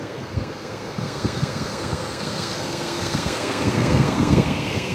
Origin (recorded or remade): remade